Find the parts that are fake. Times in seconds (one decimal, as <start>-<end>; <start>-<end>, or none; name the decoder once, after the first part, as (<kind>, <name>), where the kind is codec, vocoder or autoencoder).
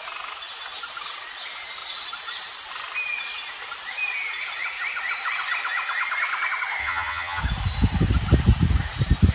6.8-7.4 (vocoder, HiFi-GAN)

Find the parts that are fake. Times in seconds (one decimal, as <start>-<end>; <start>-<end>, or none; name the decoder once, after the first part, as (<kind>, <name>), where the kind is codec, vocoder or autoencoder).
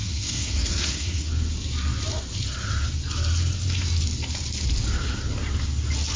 0.0-1.3 (codec, SNAC)